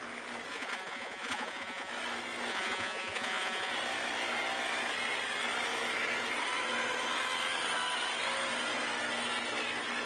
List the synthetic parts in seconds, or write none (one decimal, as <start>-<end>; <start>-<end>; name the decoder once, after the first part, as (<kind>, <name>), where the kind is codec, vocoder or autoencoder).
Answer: 0.5-1.9 (vocoder, Vocos); 2.5-3.7